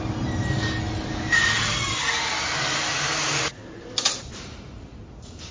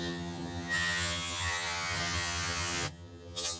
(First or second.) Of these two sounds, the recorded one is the first